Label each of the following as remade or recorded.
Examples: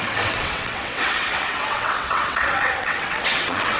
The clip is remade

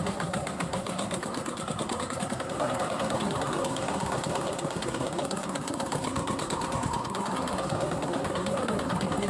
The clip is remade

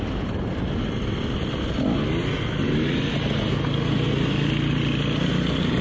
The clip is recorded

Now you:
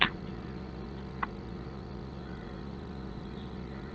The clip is remade